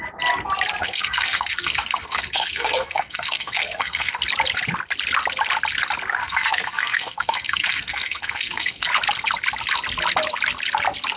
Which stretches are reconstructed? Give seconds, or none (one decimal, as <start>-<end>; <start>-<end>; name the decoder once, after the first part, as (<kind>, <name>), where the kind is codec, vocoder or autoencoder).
0.8-4.1 (codec, SNAC); 6.2-8.9